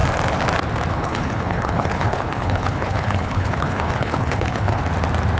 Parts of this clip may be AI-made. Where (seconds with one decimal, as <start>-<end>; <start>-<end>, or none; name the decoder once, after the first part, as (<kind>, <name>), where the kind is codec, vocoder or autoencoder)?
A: 0.9-4.8 (codec, HILCodec)